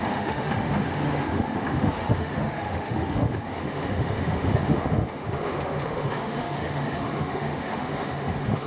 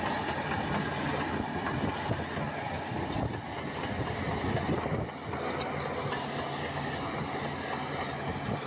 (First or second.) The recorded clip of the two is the second